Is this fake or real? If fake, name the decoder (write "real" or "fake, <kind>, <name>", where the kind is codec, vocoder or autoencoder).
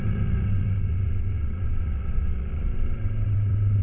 fake, vocoder, WaveNeXt